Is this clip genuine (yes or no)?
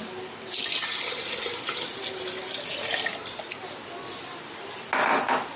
yes